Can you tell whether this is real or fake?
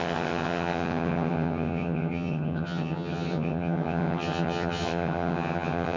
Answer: fake